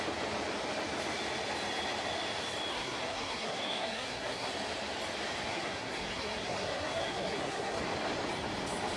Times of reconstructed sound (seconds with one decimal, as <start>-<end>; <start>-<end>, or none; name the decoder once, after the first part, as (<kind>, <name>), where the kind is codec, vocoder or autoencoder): 2.7-4.5 (codec, SNAC); 5.5-7.8